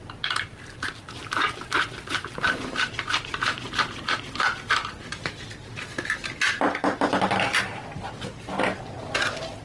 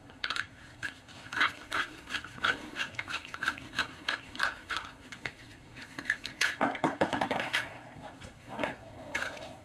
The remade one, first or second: second